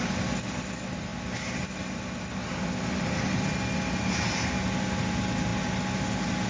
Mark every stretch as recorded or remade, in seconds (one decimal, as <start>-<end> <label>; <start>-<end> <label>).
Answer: 0.0-6.5 recorded

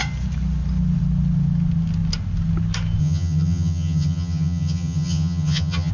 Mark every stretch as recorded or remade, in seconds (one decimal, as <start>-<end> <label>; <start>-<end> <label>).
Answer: 0.0-3.0 recorded; 3.0-5.9 remade

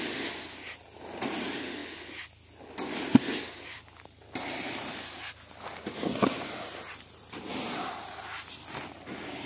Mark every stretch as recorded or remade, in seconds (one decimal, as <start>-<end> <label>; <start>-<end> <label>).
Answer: 0.0-9.5 recorded

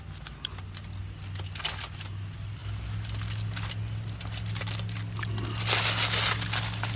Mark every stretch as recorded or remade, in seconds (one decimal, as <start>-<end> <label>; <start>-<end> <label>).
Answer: 0.0-7.0 recorded

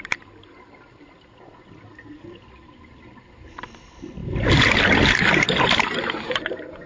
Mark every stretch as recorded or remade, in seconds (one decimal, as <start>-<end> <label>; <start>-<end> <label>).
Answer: 0.0-6.9 recorded

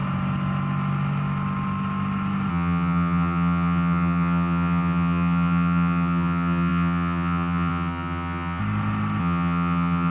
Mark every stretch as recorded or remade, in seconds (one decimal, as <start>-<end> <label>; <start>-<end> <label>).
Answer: 0.0-2.5 recorded; 2.5-8.6 remade; 8.6-9.2 recorded; 9.2-10.1 remade